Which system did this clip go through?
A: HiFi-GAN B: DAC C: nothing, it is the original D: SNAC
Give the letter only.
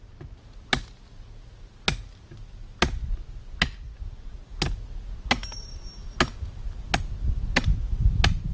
C